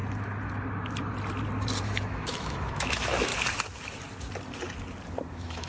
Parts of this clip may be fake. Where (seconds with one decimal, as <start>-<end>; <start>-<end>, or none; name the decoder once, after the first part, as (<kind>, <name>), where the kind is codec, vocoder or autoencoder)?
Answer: 1.8-3.3 (autoencoder, DAC-VAE); 5.3-5.7